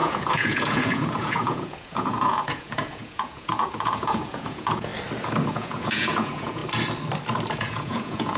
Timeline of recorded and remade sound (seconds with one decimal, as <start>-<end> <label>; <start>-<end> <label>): 0.0-4.9 remade; 4.9-5.5 recorded; 5.5-6.6 remade; 6.6-7.5 recorded; 7.5-8.4 remade